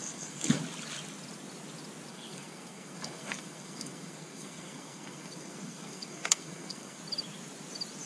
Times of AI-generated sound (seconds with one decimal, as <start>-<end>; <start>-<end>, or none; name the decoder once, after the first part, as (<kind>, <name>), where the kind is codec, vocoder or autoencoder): 0.0-0.6 (codec, SNAC); 2.1-7.0